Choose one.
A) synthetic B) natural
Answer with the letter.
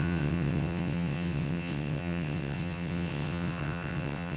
A